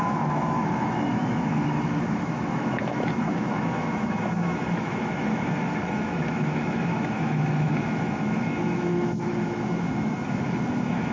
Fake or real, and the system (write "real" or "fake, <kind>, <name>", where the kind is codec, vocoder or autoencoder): fake, autoencoder, DAC-VAE